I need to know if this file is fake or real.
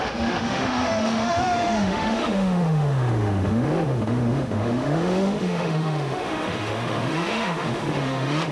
fake